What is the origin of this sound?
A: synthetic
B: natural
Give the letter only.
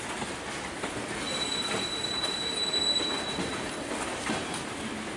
B